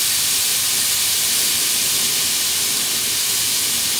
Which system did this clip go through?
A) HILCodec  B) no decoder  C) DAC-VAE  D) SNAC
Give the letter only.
B